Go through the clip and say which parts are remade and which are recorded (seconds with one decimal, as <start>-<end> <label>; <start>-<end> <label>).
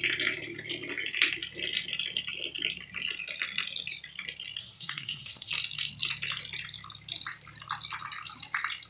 0.0-4.6 recorded; 4.6-5.5 remade; 5.5-8.9 recorded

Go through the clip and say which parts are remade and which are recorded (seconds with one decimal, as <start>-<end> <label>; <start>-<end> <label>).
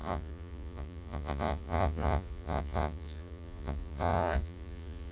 0.0-5.1 remade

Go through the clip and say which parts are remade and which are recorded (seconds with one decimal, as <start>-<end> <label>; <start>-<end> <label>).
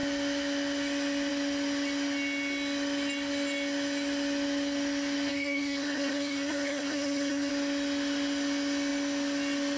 0.0-5.3 recorded; 5.3-7.5 remade; 7.5-9.8 recorded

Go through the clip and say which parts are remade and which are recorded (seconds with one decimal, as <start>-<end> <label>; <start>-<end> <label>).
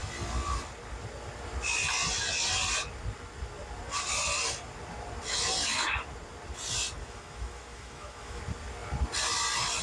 0.0-7.0 recorded; 7.0-8.4 remade; 8.4-9.8 recorded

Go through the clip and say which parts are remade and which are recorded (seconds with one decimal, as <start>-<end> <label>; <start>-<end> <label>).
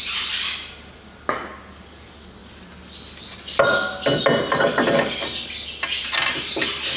0.0-7.0 recorded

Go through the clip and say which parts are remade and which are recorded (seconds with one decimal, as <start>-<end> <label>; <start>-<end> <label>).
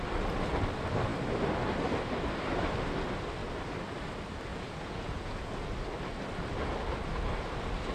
0.0-4.5 recorded; 4.5-5.5 remade; 5.5-7.9 recorded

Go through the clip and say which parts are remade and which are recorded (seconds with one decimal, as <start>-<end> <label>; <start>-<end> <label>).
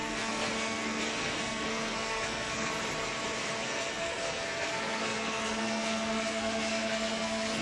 0.0-2.7 remade; 2.7-3.4 recorded; 3.4-7.6 remade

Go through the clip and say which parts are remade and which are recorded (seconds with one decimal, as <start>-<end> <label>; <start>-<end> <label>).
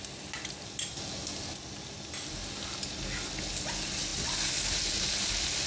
0.0-5.7 recorded